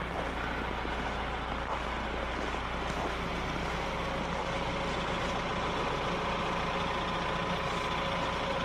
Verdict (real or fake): real